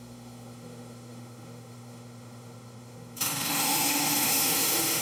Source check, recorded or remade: remade